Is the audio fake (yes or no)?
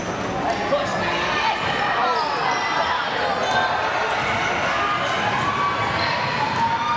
no